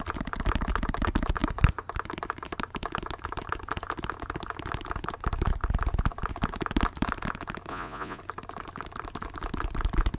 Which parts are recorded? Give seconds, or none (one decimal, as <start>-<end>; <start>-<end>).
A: 0.0-7.7; 8.2-10.2